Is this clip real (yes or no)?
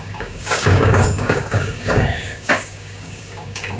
no